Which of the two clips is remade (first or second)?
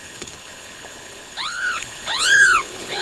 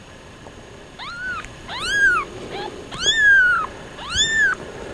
first